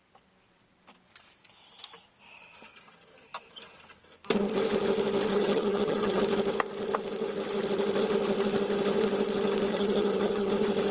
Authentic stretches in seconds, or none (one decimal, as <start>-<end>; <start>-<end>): 0.0-5.3; 6.2-9.7; 10.5-10.9